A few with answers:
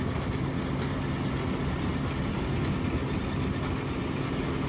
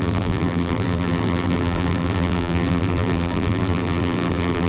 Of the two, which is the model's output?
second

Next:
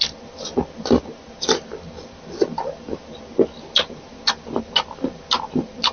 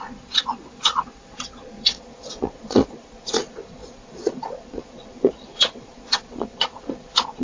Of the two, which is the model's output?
second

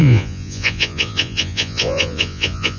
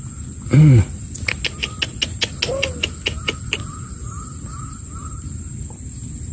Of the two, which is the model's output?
first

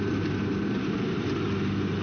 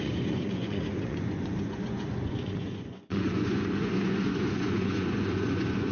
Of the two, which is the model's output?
second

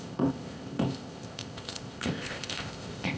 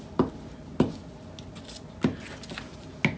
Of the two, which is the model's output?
first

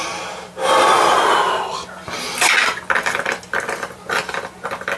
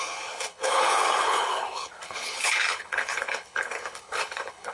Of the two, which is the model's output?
second